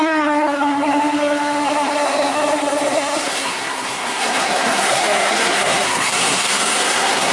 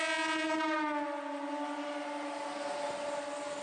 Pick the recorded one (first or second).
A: second